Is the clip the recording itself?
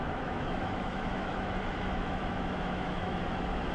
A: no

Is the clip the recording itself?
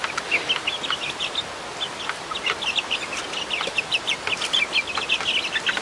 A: yes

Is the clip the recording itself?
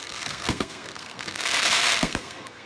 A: no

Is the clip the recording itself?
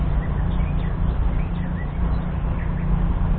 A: yes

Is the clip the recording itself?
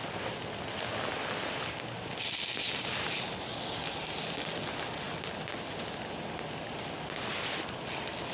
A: yes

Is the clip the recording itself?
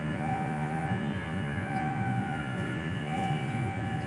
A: no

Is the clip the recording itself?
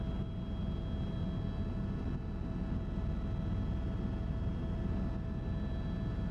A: yes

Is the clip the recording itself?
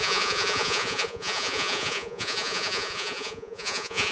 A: no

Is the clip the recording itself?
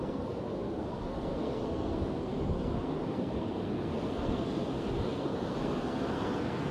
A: no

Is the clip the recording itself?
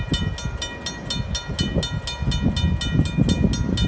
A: yes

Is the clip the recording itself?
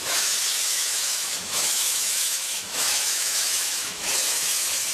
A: no